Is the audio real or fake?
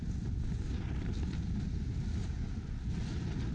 real